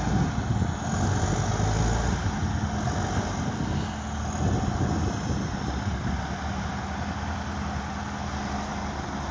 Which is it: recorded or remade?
recorded